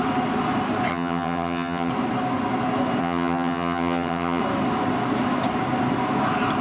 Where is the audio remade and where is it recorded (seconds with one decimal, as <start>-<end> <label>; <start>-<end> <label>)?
0.0-0.9 recorded; 0.9-1.9 remade; 1.9-3.0 recorded; 3.0-4.4 remade; 4.4-6.6 recorded